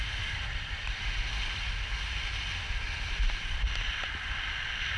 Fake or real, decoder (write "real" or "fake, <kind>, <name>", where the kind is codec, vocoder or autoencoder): real